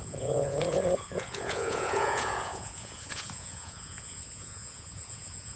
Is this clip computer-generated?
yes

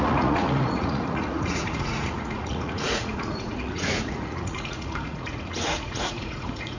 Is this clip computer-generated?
yes